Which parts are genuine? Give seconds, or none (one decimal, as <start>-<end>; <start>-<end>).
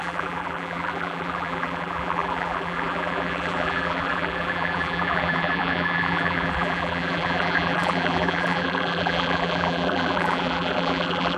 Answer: none